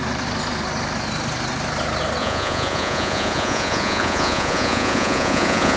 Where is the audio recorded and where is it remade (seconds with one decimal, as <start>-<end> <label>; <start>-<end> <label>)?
0.0-2.2 recorded; 2.2-5.8 remade